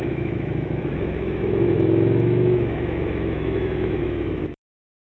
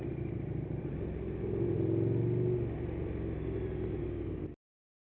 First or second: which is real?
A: second